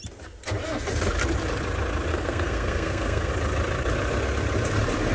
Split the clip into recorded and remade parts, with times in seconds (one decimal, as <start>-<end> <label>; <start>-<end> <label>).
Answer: 0.0-2.1 recorded; 2.1-3.3 remade; 3.3-5.1 recorded